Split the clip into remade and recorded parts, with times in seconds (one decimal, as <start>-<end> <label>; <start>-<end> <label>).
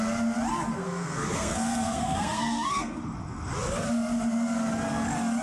0.0-0.5 recorded; 0.5-3.0 remade; 3.0-5.4 recorded